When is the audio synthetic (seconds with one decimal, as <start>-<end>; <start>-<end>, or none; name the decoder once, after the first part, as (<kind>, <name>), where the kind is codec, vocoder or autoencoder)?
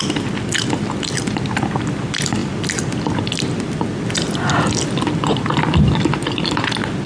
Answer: none